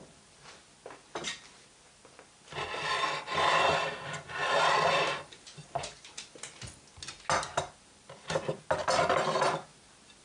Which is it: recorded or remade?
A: recorded